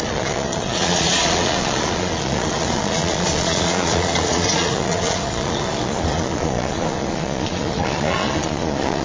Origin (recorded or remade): remade